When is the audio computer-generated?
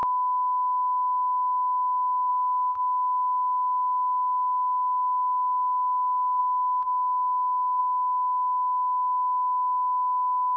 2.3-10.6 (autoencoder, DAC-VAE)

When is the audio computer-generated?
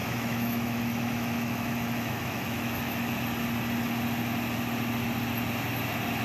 0.0-3.2 (autoencoder, DAC-VAE)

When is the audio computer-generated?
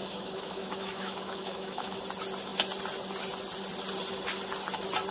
0.0-2.0 (autoencoder, DAC-VAE)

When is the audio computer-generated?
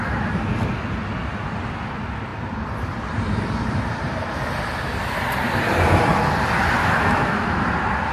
6.8-7.5 (autoencoder, DAC-VAE)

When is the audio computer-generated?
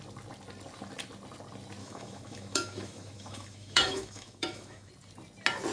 1.8-4.9 (autoencoder, DAC-VAE)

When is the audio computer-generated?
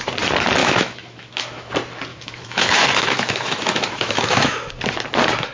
0.6-1.7 (autoencoder, DAC-VAE); 2.1-4.7